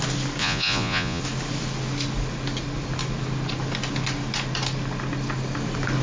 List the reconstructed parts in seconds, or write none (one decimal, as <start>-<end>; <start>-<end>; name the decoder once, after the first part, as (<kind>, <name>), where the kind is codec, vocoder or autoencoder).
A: 0.4-1.2 (vocoder, Vocos)